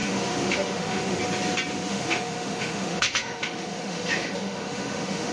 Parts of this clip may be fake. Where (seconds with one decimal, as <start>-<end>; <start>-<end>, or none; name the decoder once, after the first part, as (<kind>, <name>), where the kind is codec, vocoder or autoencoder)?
0.0-1.2 (autoencoder, DAC-VAE); 1.9-5.3